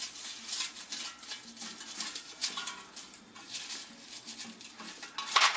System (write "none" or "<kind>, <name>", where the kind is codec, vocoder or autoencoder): none